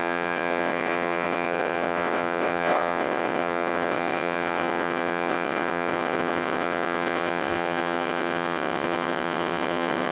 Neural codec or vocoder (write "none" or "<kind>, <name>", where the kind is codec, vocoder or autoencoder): vocoder, WaveNeXt